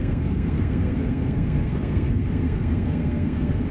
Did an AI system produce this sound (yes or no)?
yes